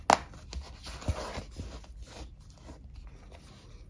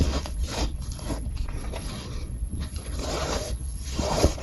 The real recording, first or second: first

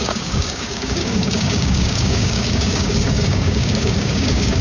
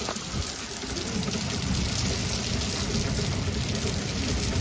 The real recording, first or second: second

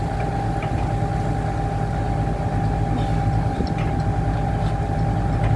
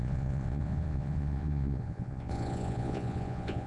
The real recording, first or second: first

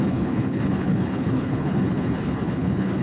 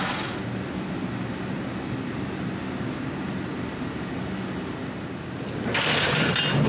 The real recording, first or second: second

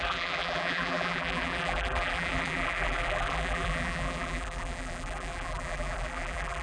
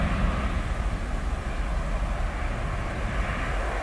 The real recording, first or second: second